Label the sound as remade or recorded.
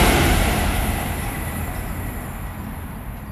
recorded